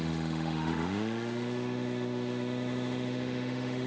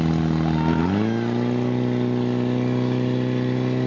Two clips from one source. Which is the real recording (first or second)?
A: second